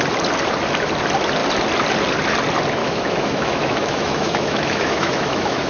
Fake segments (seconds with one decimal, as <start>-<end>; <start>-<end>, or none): 2.8-5.7